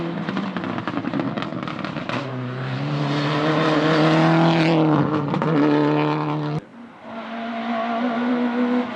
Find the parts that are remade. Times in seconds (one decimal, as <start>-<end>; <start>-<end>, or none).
none